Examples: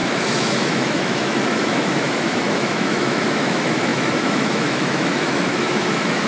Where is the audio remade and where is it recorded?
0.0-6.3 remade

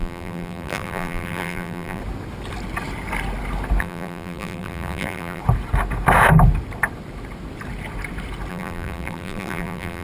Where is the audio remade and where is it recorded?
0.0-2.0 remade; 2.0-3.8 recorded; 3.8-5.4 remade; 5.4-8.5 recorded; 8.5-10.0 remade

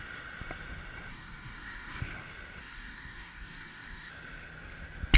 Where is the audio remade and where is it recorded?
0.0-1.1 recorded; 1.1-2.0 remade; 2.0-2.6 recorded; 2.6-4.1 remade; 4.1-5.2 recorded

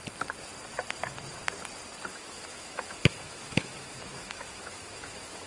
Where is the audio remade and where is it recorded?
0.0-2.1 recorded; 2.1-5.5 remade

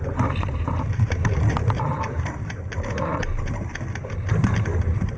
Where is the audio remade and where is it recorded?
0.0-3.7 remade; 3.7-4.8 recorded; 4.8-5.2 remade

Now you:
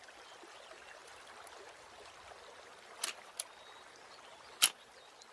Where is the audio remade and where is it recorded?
0.0-5.3 recorded

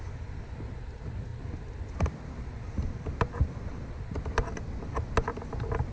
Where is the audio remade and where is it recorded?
0.0-5.9 recorded

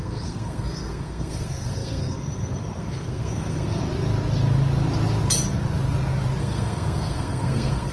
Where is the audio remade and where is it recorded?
0.0-3.8 remade; 3.8-6.4 recorded; 6.4-7.9 remade